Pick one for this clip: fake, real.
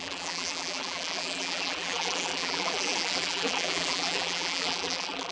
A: fake